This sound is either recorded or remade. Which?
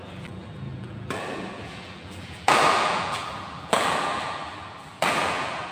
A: remade